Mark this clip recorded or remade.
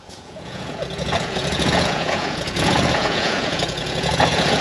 remade